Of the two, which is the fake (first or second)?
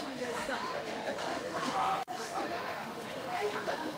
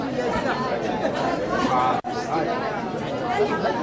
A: first